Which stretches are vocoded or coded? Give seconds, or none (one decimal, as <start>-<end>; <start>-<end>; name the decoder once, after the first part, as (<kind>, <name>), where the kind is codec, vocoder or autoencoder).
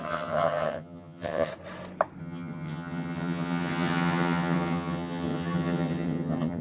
0.0-1.5 (vocoder, HiFi-GAN); 2.2-6.6